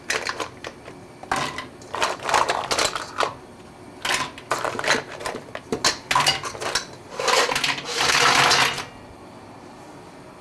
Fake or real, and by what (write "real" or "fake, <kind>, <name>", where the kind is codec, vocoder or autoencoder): real